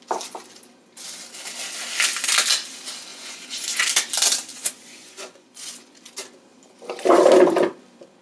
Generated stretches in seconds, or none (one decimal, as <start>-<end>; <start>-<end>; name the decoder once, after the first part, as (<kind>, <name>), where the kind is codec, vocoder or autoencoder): 3.1-3.8 (vocoder, Vocos); 4.5-6.0